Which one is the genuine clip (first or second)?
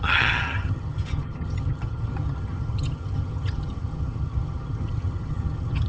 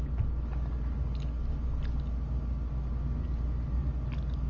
second